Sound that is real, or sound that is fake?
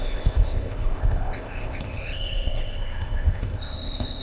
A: fake